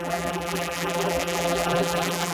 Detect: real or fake fake